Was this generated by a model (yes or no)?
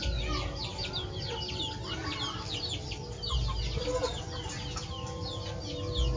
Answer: no